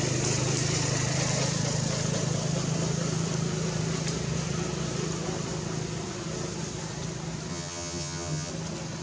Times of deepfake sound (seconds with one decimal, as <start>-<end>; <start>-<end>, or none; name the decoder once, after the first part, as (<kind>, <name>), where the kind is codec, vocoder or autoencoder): 7.5-8.5 (vocoder, HiFi-GAN)